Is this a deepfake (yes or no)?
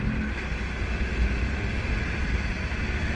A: no